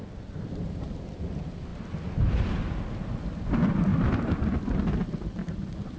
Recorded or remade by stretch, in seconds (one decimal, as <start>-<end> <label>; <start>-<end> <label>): 0.0-6.0 recorded